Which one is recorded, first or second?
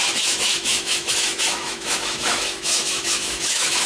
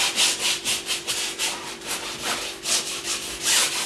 second